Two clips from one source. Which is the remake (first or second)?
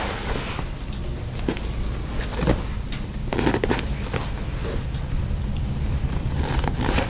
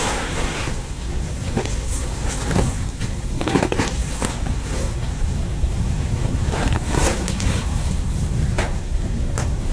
second